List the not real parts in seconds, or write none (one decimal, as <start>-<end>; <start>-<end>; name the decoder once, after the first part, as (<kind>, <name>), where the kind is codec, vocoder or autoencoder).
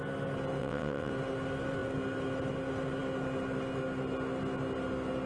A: 0.6-1.1 (vocoder, WaveNeXt)